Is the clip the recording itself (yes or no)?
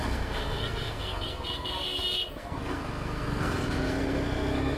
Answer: no